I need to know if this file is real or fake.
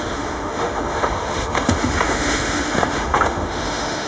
fake